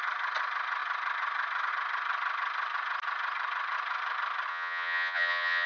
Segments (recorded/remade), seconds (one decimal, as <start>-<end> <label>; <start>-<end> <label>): 0.0-4.5 recorded; 4.5-5.7 remade